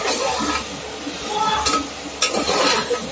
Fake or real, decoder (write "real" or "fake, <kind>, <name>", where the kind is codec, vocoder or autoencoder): real